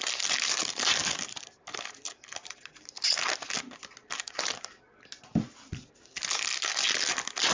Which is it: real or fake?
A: real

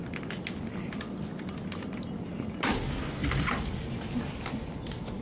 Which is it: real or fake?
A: real